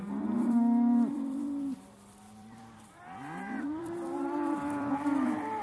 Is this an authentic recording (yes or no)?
no